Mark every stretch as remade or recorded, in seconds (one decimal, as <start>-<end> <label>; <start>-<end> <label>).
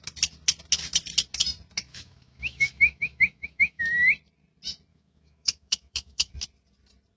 0.0-1.9 recorded; 1.9-3.8 remade; 3.8-4.9 recorded; 4.9-6.3 remade; 6.3-7.2 recorded